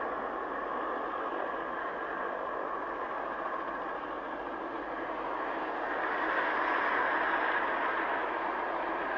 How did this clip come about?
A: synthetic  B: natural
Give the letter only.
B